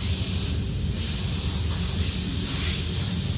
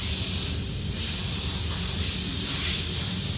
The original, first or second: first